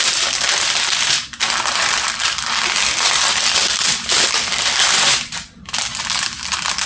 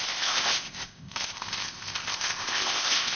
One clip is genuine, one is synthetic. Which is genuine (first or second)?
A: first